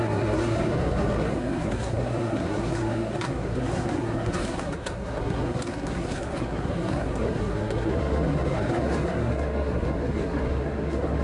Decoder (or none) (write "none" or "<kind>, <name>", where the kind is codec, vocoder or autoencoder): codec, SNAC